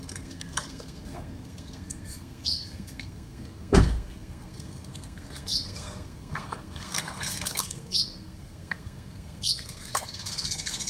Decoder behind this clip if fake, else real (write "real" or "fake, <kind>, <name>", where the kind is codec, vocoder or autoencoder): fake, codec, SNAC